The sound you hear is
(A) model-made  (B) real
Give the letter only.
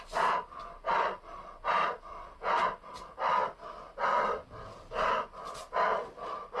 B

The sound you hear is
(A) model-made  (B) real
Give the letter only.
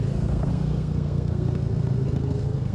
A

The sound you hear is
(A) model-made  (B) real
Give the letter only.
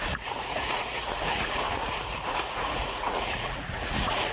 A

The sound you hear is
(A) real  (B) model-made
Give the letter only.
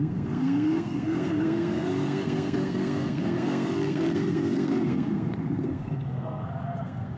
B